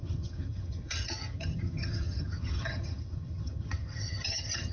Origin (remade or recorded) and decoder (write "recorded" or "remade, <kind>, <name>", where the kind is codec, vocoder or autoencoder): remade, vocoder, HiFi-GAN